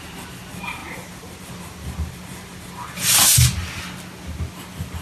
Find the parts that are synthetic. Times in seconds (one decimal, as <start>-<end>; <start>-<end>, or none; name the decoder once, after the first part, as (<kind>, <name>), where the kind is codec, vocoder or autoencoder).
none